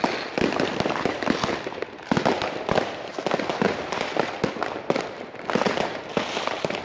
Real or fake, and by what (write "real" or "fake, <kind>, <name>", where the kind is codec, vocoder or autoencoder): real